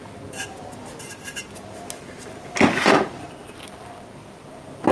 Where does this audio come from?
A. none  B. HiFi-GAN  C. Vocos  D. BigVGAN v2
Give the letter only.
A